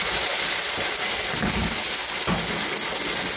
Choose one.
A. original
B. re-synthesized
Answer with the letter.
A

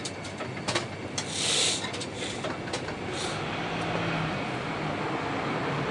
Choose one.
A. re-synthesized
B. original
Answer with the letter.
B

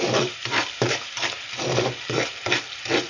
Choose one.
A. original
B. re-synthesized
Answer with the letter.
B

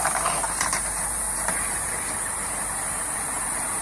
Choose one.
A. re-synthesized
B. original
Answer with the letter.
A